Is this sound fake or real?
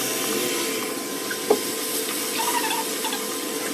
real